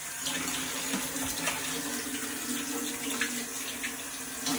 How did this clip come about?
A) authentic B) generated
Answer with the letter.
A